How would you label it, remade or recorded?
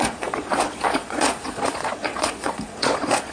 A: remade